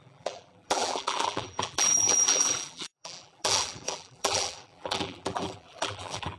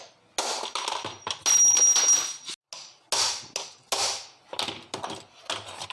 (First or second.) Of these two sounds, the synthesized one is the first